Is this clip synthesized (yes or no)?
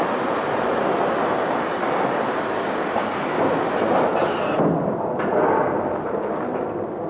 no